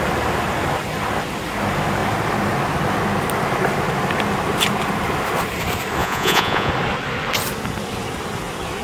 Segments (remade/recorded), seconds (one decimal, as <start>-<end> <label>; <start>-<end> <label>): 0.0-6.0 recorded; 6.0-6.7 remade; 6.7-8.8 recorded